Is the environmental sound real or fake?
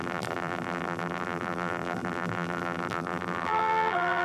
fake